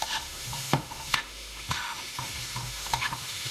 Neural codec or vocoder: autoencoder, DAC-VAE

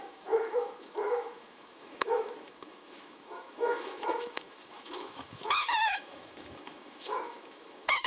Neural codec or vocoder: autoencoder, DAC-VAE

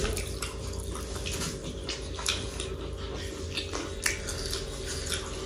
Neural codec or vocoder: none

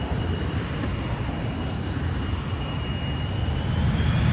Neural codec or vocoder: none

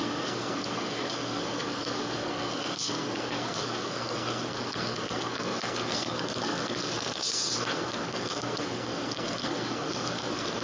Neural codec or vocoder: codec, SNAC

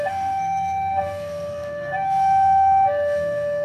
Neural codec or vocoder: codec, SNAC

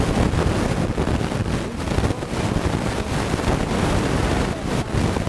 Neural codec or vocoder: none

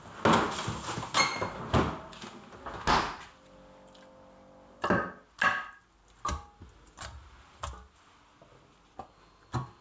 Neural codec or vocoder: none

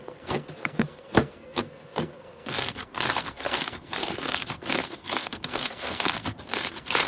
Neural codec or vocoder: codec, SNAC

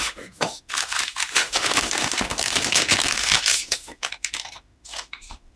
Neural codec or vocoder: autoencoder, DAC-VAE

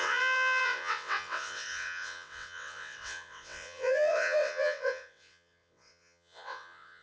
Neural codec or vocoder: vocoder, WaveNeXt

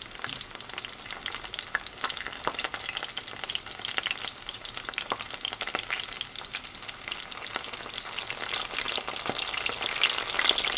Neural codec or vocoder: none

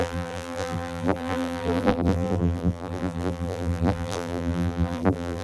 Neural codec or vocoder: vocoder, BigVGAN v2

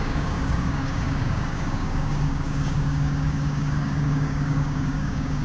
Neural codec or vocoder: codec, DAC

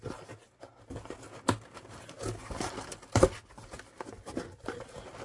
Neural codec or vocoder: none